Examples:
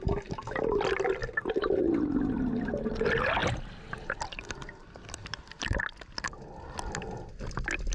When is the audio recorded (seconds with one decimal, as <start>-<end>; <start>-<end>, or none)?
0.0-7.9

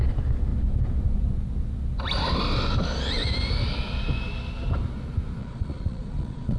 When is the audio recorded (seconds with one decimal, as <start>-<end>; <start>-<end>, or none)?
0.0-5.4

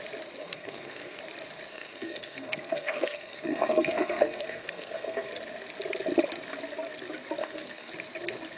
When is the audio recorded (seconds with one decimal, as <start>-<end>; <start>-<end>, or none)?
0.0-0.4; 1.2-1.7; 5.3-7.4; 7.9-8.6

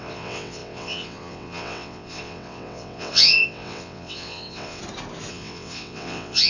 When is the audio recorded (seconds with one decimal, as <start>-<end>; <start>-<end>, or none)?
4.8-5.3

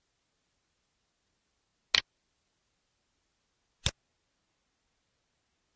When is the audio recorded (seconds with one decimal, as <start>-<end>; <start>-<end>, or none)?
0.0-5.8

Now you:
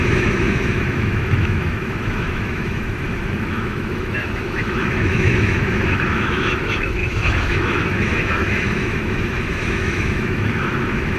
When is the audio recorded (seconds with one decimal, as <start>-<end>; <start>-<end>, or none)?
none

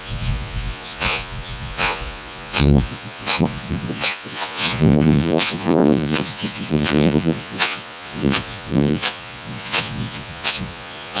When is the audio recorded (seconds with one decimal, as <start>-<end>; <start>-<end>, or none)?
none